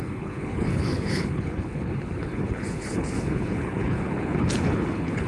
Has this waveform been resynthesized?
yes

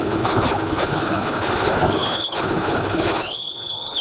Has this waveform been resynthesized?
yes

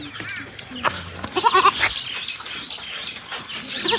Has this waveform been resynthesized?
no